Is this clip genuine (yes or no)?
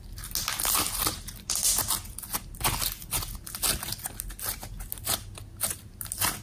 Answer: yes